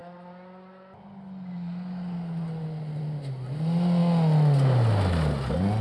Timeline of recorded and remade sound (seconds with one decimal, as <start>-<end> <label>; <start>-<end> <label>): 0.0-5.8 recorded